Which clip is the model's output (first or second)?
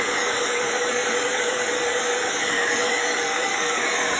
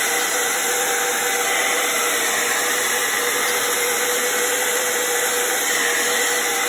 first